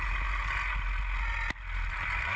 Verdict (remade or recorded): recorded